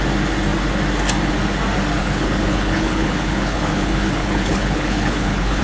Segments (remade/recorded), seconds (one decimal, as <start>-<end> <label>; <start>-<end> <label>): 0.0-2.0 recorded; 2.0-5.6 remade